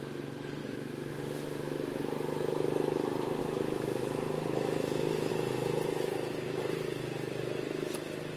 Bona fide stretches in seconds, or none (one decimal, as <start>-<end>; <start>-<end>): 0.0-0.6; 2.0-3.4; 5.3-8.4